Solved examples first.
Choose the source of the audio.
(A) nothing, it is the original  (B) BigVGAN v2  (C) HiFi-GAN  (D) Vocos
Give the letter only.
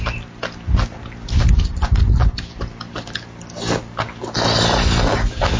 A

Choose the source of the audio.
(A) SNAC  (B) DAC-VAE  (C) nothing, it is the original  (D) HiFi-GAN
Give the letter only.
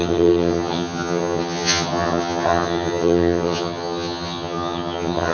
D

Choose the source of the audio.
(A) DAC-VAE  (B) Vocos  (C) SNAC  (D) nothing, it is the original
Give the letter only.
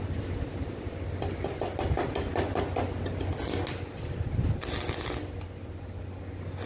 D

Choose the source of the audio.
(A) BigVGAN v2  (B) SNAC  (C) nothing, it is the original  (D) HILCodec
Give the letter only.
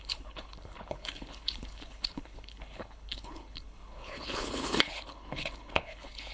D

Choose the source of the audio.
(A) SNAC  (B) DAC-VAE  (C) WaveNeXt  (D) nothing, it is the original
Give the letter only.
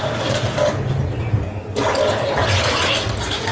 D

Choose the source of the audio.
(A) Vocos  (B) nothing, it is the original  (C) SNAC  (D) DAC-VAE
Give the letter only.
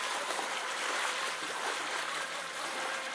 B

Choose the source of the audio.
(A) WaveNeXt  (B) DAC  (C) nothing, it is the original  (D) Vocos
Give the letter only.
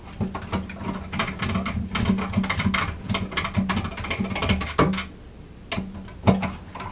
C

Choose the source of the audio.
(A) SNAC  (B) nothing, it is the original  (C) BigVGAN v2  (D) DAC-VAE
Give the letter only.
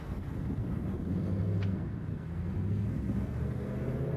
A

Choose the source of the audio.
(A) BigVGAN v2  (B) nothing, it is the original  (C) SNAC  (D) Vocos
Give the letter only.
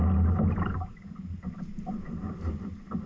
B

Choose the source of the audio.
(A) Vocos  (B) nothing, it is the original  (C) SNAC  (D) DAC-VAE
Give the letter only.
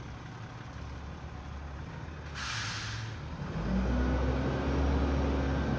B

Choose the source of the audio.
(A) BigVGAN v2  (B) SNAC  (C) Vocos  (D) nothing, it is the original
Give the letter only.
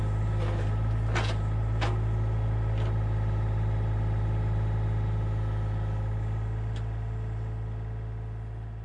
D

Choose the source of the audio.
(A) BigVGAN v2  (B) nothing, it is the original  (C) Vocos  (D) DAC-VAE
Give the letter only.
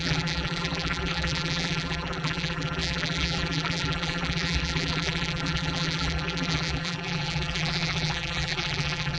A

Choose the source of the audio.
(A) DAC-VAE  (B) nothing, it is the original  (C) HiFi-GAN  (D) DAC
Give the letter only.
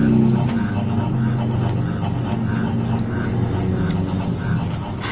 B